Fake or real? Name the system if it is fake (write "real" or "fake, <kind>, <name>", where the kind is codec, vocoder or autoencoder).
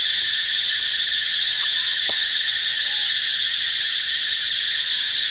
fake, vocoder, HiFi-GAN